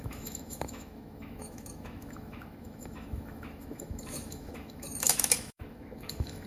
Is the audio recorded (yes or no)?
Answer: no